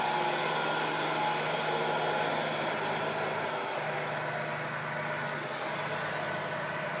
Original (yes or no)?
yes